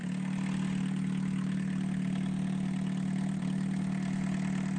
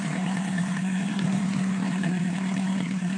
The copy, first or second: second